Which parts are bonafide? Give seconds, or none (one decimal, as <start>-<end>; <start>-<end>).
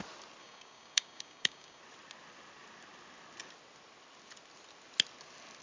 0.0-0.4; 1.8-5.6